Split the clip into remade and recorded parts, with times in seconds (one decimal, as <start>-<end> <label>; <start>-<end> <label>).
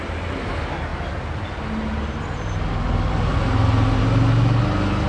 0.0-5.1 recorded